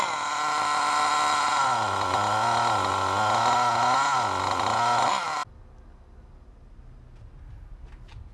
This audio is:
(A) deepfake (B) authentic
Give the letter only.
B